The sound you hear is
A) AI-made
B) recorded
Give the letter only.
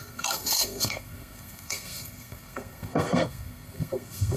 A